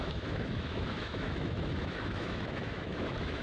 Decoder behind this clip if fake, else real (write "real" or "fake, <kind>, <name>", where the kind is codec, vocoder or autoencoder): fake, autoencoder, DAC-VAE